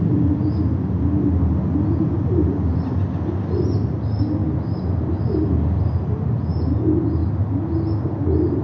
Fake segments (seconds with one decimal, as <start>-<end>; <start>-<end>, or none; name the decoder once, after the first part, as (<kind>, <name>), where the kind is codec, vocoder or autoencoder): none